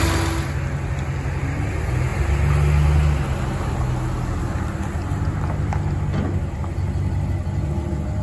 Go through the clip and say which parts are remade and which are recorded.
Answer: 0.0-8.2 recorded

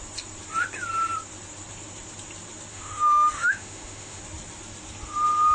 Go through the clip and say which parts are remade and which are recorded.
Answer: 0.0-2.7 recorded; 2.7-4.2 remade; 4.2-5.5 recorded

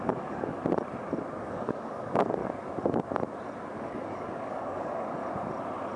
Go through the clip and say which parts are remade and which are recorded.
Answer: 0.0-0.6 remade; 0.6-1.4 recorded; 1.4-2.4 remade; 2.4-3.8 recorded; 3.8-5.2 remade; 5.2-6.0 recorded

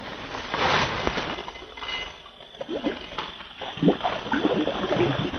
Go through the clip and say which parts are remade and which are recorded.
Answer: 0.0-1.4 remade; 1.4-4.1 recorded; 4.1-5.4 remade